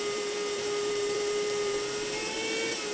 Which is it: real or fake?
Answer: fake